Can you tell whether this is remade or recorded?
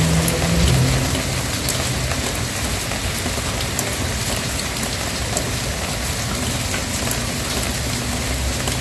recorded